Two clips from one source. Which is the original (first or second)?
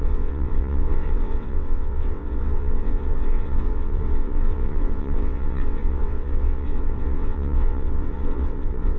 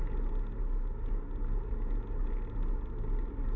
second